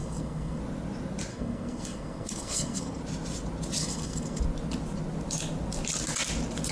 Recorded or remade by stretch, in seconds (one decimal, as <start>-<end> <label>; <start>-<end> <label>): 0.0-0.6 remade; 0.6-1.3 recorded; 1.3-3.0 remade; 3.0-3.8 recorded; 3.8-4.4 remade; 4.4-6.7 recorded